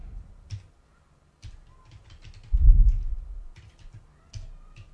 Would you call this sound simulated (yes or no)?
no